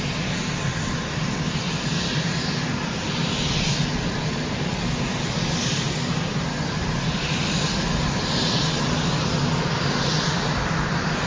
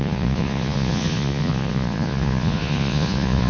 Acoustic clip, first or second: first